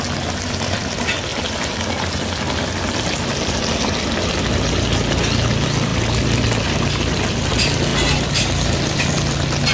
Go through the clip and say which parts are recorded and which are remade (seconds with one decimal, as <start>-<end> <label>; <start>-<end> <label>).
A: 0.0-5.9 recorded; 5.9-6.8 remade; 6.8-7.9 recorded; 7.9-8.9 remade; 8.9-9.7 recorded